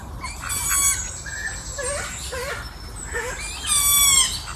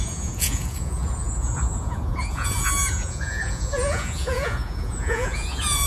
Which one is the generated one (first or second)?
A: second